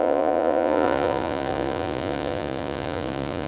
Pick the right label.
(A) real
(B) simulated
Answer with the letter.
B